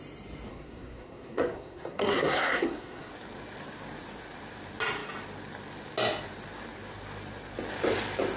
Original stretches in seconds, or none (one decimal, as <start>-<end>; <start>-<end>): 0.0-0.5; 3.1-8.4